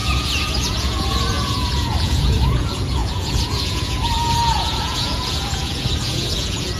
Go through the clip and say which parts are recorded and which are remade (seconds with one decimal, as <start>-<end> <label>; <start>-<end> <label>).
0.0-6.8 remade